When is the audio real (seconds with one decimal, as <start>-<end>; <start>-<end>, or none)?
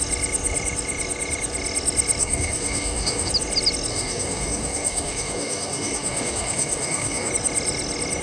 0.0-2.2; 3.3-3.9; 7.3-8.2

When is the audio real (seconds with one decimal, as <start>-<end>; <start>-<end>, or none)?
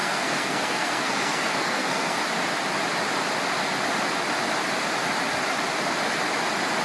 2.2-6.8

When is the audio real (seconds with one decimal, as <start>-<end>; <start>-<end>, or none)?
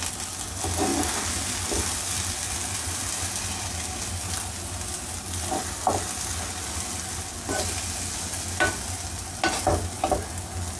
0.0-10.8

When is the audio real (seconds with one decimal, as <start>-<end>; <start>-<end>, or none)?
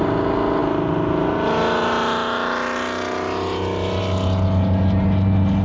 0.0-5.6